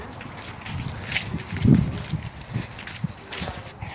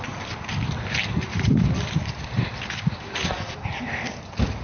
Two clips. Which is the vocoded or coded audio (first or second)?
second